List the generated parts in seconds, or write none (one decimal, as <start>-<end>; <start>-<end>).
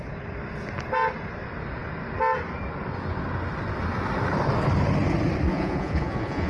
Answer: 5.5-6.5